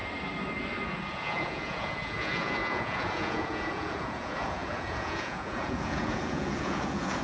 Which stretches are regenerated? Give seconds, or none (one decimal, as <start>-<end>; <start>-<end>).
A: 1.1-7.2